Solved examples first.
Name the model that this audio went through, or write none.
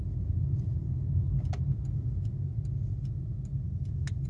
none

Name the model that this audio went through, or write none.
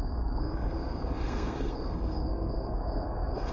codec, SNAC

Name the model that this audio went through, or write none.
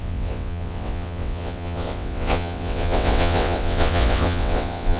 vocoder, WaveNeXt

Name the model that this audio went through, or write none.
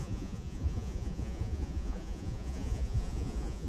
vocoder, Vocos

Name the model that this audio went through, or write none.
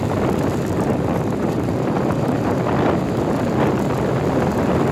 vocoder, BigVGAN v2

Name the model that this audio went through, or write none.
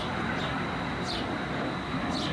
none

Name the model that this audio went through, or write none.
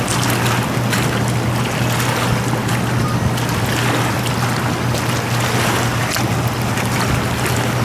none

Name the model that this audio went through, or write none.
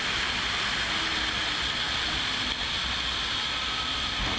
none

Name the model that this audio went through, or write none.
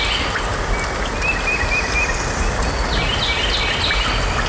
none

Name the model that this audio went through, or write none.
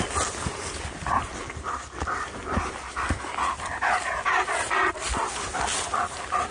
none